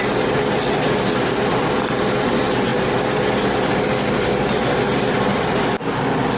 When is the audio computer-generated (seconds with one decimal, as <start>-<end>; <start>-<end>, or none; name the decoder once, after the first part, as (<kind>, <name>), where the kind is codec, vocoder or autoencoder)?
none